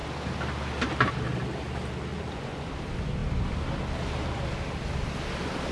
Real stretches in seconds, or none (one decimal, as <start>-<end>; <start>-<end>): 0.0-2.1; 2.7-5.7